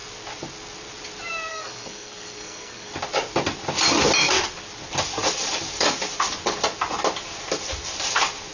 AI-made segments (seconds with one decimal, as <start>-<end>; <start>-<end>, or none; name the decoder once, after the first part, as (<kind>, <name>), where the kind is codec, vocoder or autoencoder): 1.5-2.9 (codec, SNAC)